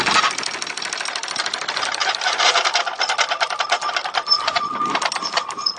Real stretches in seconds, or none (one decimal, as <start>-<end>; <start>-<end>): 0.0-5.8